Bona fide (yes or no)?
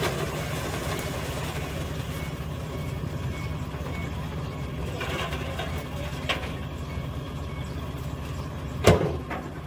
yes